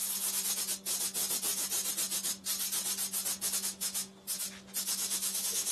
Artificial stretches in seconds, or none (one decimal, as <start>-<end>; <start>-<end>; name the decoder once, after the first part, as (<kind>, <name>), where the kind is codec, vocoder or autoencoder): 3.4-4.1 (autoencoder, DAC-VAE); 4.8-5.7